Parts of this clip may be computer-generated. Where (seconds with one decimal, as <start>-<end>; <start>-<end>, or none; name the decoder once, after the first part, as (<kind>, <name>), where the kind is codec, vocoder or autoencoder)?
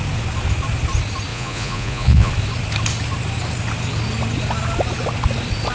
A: 1.3-2.3 (vocoder, Vocos)